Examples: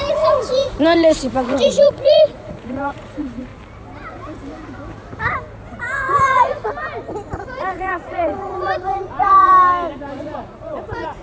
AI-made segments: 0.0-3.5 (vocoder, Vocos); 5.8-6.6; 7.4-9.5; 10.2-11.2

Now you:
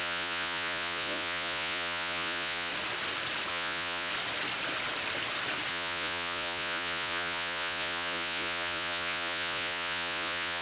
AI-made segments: 0.0-2.7 (vocoder, Vocos); 3.5-4.1; 5.7-10.6

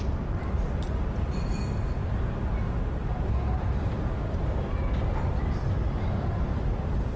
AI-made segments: none

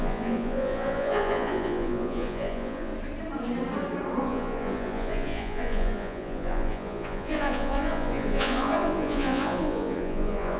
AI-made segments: 0.0-2.9 (vocoder, Vocos); 4.2-10.6